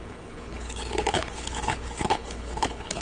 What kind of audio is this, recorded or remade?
remade